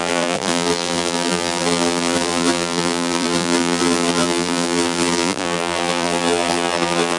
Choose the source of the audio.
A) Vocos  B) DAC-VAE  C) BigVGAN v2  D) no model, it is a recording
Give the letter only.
C